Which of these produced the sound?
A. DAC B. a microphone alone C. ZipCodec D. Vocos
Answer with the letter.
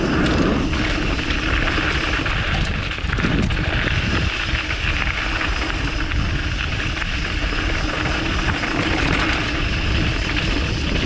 B